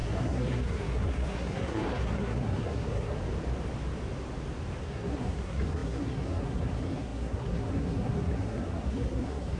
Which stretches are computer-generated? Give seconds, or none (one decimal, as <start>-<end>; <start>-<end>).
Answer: 0.0-3.2; 4.8-9.6